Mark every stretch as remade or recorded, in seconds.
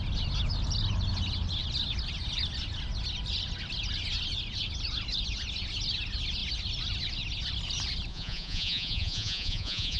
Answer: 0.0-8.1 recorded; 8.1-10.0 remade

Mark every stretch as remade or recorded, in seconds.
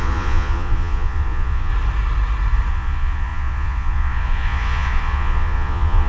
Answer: 0.0-1.7 remade; 1.7-2.7 recorded; 2.7-6.1 remade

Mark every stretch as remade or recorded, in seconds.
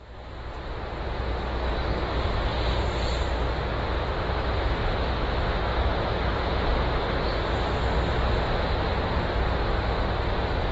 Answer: 0.0-6.3 recorded; 6.3-7.3 remade; 7.3-10.7 recorded